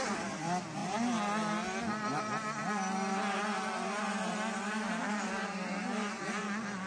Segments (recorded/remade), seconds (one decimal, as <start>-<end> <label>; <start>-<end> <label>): 0.0-6.9 recorded